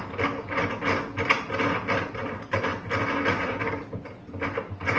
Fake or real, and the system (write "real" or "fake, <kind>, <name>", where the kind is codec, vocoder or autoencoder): real